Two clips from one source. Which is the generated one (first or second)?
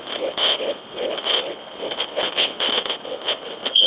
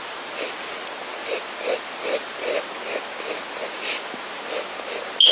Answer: first